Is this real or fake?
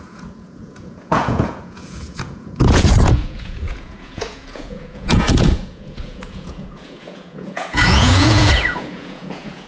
fake